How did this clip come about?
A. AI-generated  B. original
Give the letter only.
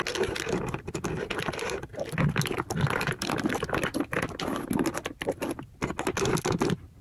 B